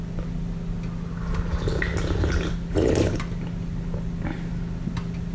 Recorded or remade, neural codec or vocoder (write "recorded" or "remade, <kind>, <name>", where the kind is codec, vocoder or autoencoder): recorded